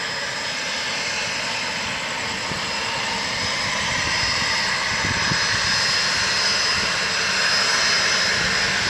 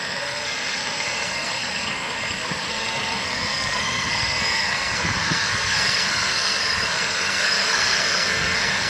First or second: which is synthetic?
second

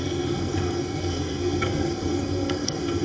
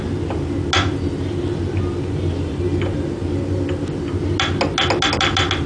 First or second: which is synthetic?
first